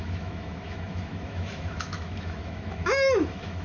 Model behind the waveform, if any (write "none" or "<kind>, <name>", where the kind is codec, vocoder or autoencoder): autoencoder, DAC-VAE